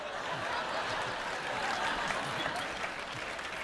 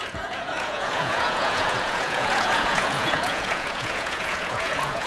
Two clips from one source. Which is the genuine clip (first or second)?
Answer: first